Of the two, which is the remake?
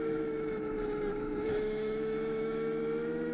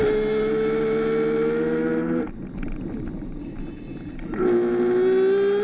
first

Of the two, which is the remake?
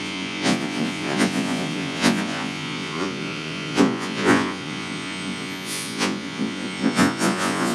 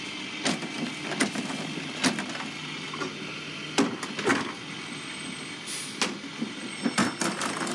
first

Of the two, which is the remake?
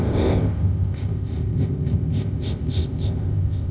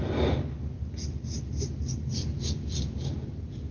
first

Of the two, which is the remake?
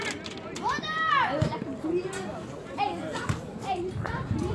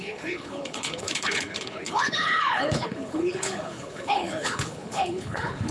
second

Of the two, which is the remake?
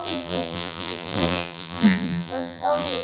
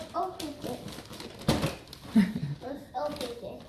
first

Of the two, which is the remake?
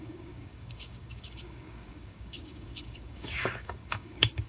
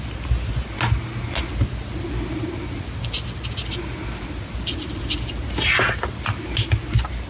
first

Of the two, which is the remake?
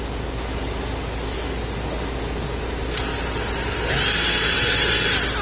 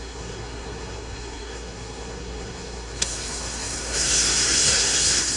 second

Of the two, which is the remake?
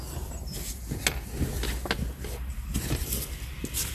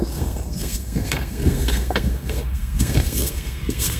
second